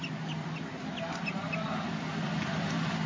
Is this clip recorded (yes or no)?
yes